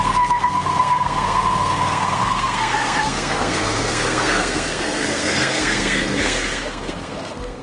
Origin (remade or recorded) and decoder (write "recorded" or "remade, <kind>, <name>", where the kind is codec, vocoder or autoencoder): remade, codec, SNAC